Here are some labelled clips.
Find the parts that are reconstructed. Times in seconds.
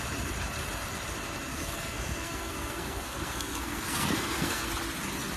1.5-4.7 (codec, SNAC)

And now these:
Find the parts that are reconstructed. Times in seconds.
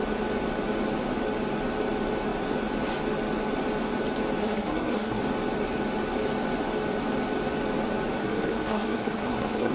4.4-5.2 (codec, SNAC); 8.2-9.7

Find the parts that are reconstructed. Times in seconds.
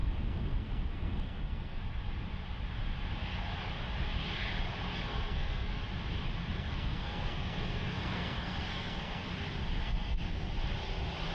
0.0-1.8 (codec, SNAC); 5.1-5.8; 6.4-9.3; 9.8-10.5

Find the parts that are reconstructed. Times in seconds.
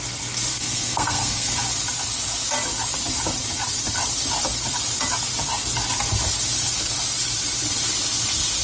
0.5-1.5 (codec, SNAC)